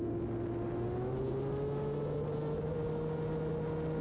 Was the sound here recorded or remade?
recorded